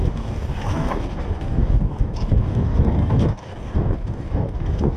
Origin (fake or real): fake